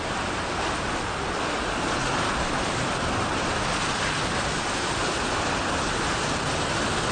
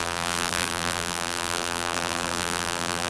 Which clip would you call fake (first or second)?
second